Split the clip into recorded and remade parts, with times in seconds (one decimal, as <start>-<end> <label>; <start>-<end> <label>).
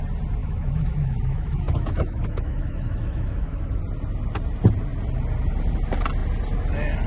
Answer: 0.0-0.4 recorded; 0.4-3.8 remade; 3.8-7.1 recorded